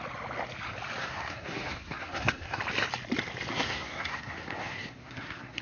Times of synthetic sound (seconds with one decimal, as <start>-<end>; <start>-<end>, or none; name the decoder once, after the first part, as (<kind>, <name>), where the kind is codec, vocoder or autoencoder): 1.0-2.6 (codec, SNAC); 3.5-5.6